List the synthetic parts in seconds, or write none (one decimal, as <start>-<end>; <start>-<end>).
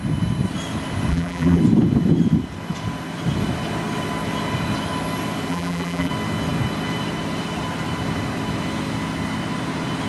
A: 1.1-1.6; 5.5-6.1